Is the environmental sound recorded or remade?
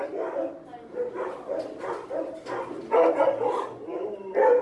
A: recorded